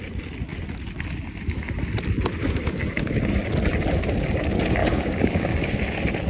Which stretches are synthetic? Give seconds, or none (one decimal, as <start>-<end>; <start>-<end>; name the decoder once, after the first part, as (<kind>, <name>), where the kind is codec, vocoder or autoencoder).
2.4-3.2 (codec, DAC); 4.8-5.8

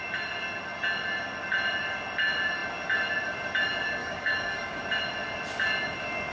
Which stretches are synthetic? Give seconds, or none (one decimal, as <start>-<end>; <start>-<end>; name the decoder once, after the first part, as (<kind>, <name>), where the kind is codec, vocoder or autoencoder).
4.0-4.8 (codec, DAC)

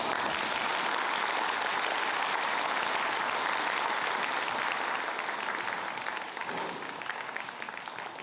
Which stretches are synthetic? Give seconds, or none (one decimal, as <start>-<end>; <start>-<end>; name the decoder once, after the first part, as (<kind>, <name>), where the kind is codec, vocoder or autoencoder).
6.4-7.7 (codec, DAC)

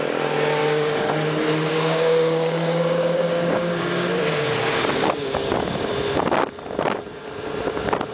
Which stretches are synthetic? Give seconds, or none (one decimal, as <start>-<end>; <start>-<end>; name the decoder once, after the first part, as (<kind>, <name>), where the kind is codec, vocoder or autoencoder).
0.6-1.1 (codec, DAC); 1.7-5.9

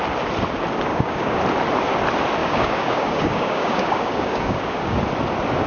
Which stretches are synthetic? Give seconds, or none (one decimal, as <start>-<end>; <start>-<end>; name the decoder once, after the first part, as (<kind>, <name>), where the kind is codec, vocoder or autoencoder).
0.9-1.4 (codec, DAC); 2.4-5.0

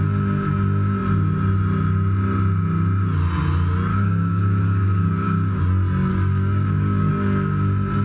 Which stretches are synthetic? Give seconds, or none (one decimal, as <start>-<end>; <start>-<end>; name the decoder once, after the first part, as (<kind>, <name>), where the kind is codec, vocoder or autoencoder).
3.9-5.6 (codec, DAC); 6.1-7.1

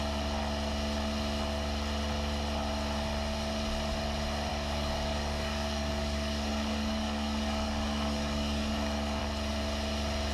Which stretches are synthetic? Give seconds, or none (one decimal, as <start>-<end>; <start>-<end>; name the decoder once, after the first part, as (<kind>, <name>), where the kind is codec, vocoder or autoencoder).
4.5-9.2 (codec, DAC)

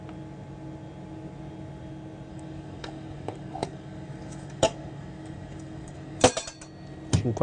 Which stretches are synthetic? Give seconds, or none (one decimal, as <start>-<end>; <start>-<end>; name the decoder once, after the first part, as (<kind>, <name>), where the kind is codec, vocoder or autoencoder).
2.3-6.2 (codec, DAC)